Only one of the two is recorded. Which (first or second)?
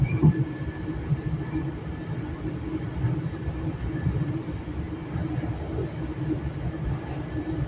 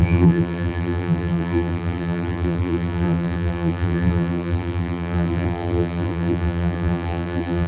first